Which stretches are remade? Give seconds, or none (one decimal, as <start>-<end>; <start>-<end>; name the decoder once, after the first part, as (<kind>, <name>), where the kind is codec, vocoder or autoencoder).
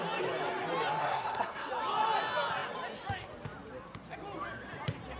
1.0-1.7 (codec, SNAC)